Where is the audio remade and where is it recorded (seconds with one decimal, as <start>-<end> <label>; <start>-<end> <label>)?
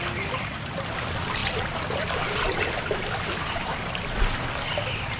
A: 0.0-5.2 recorded